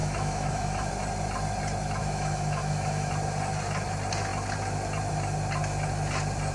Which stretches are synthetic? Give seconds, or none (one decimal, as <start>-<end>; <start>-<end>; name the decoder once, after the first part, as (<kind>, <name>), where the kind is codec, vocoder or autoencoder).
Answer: 0.0-0.9 (autoencoder, DAC-VAE); 2.0-3.1